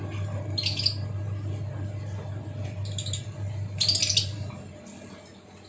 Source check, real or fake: real